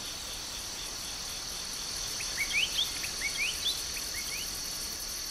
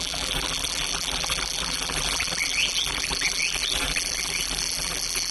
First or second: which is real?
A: first